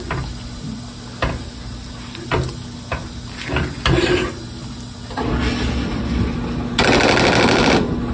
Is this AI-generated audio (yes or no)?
no